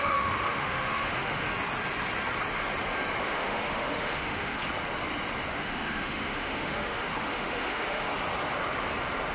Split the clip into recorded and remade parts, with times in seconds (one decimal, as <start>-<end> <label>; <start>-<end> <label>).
0.0-1.5 remade; 1.5-3.2 recorded; 3.2-4.6 remade; 4.6-5.5 recorded; 5.5-8.1 remade; 8.1-9.3 recorded